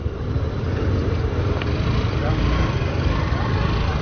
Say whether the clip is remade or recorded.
recorded